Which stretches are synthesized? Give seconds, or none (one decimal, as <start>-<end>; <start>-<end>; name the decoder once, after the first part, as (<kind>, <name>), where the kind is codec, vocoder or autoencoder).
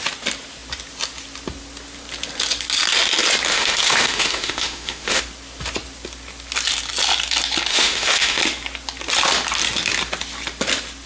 3.5-5.2 (autoencoder, DAC-VAE); 7.7-8.4